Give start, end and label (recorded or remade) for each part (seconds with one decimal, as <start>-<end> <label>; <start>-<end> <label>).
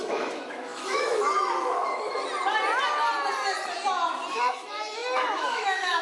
0.0-2.2 remade; 2.2-4.3 recorded; 4.3-6.0 remade